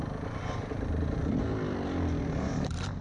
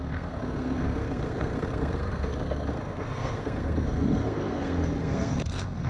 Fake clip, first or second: second